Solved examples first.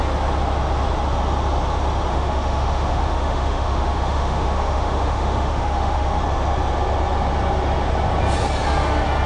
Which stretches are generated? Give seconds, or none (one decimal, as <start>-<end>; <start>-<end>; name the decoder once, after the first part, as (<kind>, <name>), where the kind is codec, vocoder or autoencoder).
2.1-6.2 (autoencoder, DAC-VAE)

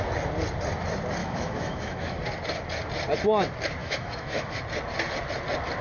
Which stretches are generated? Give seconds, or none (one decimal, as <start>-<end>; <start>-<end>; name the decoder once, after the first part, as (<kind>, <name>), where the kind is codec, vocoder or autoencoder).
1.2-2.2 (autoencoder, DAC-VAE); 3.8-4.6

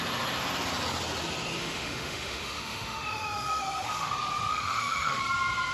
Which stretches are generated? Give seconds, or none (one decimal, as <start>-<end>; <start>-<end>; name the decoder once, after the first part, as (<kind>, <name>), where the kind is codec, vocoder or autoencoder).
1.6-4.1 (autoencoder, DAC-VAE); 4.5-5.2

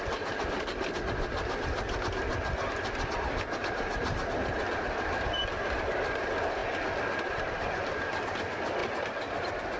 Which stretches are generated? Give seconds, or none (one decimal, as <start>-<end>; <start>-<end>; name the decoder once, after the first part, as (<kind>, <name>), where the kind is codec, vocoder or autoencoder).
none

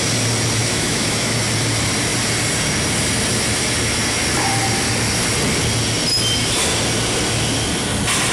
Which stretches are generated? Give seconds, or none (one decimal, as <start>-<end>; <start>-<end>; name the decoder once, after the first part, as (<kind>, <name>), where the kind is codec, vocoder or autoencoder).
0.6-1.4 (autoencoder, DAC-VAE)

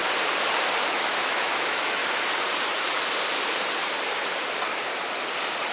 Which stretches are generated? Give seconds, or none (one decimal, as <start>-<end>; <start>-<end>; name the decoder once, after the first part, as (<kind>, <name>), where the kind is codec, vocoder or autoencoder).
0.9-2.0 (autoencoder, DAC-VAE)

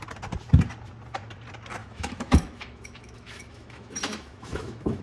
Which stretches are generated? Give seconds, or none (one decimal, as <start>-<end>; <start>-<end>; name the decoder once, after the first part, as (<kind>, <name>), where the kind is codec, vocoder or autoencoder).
1.8-5.0 (autoencoder, DAC-VAE)

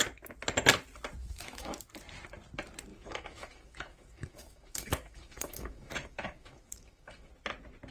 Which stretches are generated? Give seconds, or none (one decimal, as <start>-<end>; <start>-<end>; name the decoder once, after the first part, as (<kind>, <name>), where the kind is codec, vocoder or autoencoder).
1.2-1.8 (autoencoder, DAC-VAE); 2.9-7.3